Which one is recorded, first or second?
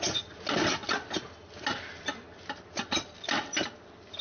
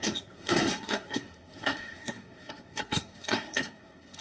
first